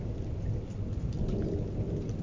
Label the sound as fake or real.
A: real